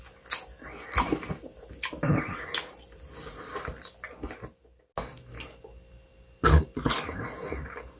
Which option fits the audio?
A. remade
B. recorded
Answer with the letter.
B